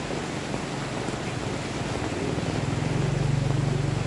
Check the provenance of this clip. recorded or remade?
recorded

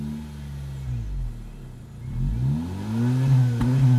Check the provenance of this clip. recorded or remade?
recorded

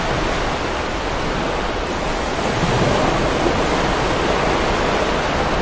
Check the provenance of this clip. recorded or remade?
recorded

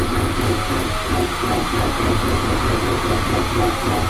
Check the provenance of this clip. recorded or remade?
recorded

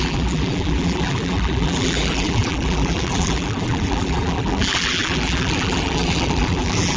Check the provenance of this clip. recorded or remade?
remade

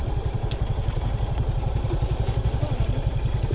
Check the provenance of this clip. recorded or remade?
remade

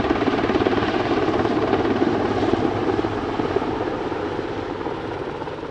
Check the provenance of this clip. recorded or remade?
remade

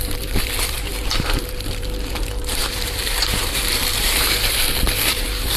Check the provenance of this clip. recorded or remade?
remade